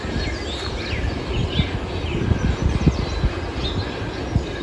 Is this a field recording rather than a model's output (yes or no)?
yes